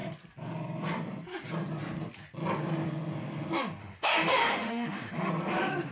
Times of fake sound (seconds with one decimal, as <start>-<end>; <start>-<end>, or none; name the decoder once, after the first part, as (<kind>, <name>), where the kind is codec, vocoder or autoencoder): 3.8-5.3 (autoencoder, DAC-VAE)